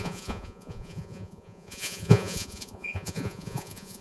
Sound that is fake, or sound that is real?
fake